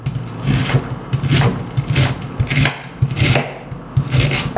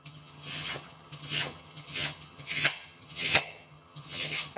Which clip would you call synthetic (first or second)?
second